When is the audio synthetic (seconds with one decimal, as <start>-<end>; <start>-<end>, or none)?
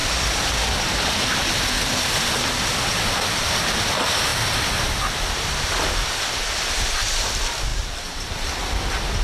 3.9-9.2